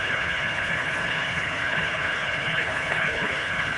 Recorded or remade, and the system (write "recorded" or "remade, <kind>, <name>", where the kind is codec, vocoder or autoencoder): remade, codec, HILCodec